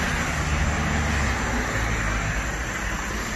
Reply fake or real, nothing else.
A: real